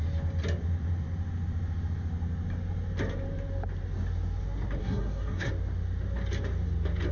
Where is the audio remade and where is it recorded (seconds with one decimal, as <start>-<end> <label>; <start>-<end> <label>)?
0.0-4.8 recorded; 4.8-5.5 remade; 5.5-7.1 recorded